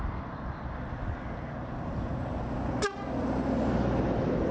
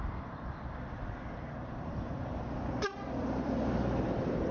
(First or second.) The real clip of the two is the first